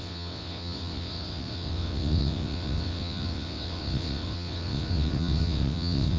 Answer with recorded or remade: remade